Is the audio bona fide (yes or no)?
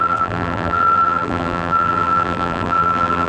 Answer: no